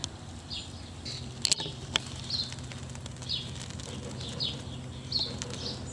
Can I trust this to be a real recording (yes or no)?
yes